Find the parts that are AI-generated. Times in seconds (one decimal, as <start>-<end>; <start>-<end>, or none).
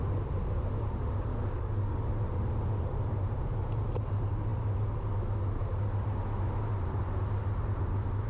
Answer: 1.3-2.1